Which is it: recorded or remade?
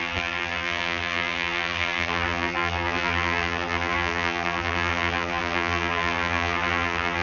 remade